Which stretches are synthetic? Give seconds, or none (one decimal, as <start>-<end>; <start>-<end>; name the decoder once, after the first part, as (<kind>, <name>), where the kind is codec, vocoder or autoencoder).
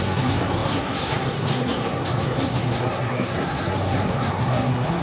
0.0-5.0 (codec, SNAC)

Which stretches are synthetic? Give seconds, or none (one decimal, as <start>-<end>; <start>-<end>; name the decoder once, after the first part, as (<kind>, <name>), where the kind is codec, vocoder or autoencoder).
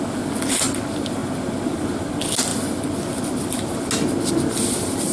none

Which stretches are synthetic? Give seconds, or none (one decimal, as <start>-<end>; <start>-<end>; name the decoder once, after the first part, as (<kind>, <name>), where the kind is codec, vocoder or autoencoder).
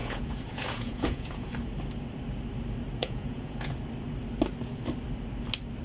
0.0-1.5 (vocoder, Vocos); 3.0-3.7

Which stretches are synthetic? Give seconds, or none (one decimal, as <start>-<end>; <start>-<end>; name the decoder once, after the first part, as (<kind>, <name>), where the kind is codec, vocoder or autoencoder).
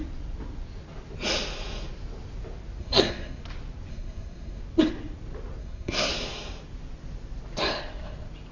2.8-3.4 (codec, SNAC); 3.9-4.6; 5.6-6.1